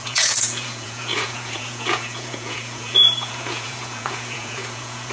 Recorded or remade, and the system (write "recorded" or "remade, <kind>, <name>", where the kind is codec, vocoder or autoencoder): remade, vocoder, Vocos